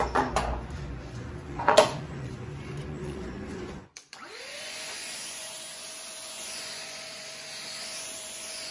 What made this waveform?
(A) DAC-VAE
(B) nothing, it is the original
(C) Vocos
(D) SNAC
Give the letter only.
C